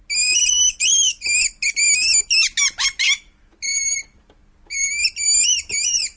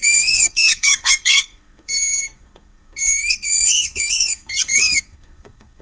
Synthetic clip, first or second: second